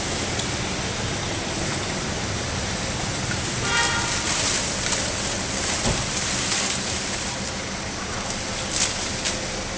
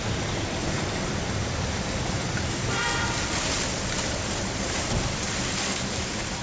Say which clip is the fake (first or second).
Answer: second